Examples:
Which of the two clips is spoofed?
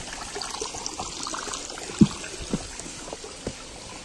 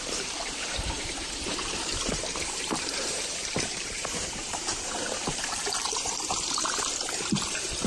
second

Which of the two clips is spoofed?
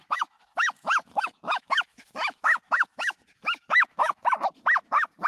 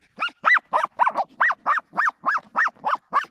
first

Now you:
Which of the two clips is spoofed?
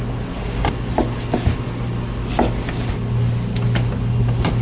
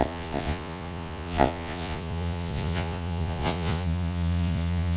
second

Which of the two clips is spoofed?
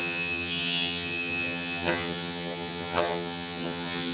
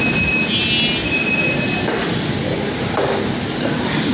first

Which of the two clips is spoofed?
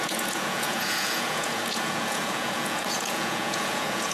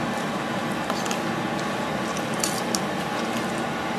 first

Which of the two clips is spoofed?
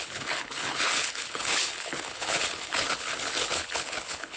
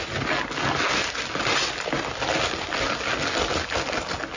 first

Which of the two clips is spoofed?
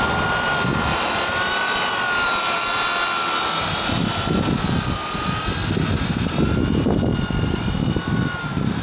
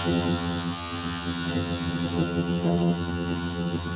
second